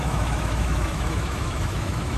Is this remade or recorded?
remade